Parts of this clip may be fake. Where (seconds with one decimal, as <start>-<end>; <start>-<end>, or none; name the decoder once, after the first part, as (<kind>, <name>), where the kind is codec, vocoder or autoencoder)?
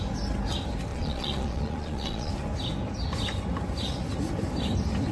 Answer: 0.9-2.3 (vocoder, Vocos)